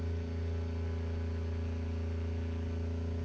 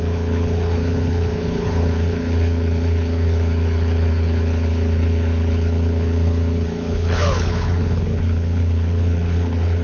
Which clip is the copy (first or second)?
second